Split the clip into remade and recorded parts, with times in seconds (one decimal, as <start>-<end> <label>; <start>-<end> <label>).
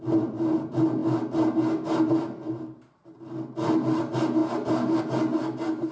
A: 0.0-5.9 recorded